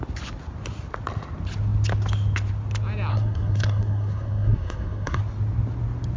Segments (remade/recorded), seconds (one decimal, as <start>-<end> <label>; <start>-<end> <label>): 0.0-3.1 recorded; 3.1-5.2 remade; 5.2-6.2 recorded